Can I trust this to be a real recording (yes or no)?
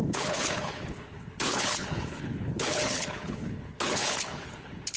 no